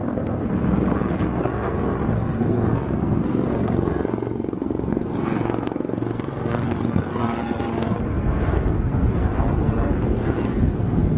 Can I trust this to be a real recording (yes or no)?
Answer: no